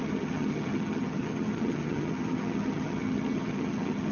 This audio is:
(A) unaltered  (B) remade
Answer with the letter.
B